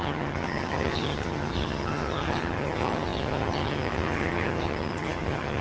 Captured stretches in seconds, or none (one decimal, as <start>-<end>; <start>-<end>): none